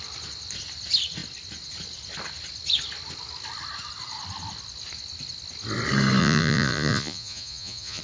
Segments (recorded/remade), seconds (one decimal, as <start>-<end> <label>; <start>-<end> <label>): 0.0-6.2 recorded; 6.2-8.0 remade